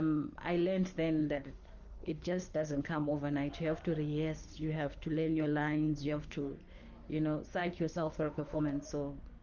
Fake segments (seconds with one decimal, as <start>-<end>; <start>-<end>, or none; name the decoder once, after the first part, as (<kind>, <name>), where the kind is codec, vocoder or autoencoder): 1.2-3.1 (codec, HILCodec); 4.4-6.5; 7.6-8.6